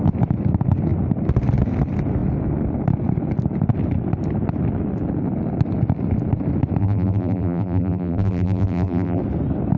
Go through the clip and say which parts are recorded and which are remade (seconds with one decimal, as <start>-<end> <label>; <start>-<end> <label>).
0.0-6.8 recorded; 6.8-9.2 remade; 9.2-9.8 recorded